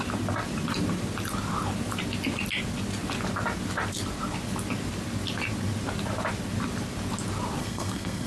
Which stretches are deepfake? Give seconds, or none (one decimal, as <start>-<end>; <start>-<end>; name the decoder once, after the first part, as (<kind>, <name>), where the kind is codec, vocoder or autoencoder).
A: 7.6-8.3 (codec, SNAC)